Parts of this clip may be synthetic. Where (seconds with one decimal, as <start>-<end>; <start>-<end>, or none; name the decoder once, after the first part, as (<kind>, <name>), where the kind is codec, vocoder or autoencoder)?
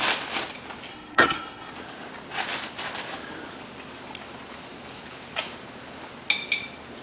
0.9-1.7 (codec, SNAC)